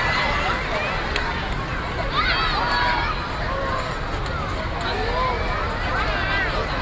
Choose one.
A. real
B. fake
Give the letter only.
A